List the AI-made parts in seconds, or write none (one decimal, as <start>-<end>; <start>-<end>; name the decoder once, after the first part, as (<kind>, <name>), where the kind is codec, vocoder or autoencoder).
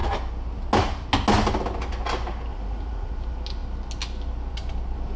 2.5-3.1 (vocoder, Vocos)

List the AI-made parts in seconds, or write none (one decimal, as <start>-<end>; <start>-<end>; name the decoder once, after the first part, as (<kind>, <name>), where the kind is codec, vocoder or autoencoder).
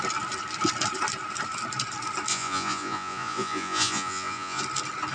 2.3-4.6 (vocoder, Vocos)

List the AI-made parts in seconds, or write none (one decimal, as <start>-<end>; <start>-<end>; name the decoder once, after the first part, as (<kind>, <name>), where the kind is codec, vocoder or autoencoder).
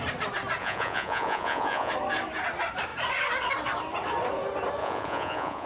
0.6-1.9 (vocoder, Vocos); 4.8-5.7